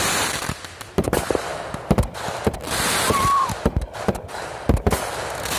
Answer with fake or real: real